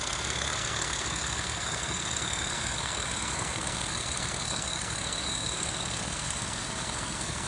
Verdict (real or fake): fake